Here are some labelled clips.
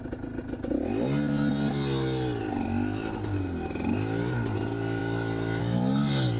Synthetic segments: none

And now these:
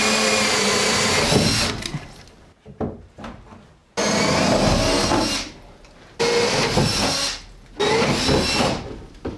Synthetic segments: none